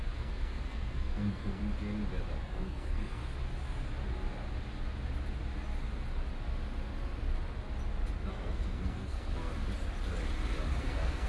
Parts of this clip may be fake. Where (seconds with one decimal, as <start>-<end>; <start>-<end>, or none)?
0.0-1.6; 2.4-3.2; 8.3-9.5; 10.8-11.3